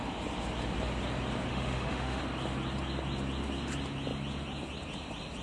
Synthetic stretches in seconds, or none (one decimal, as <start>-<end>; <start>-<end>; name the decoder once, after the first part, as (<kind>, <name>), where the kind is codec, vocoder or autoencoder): 1.5-2.2 (autoencoder, DAC-VAE)